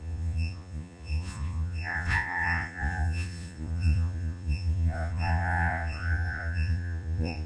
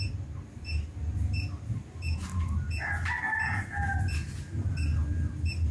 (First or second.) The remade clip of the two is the first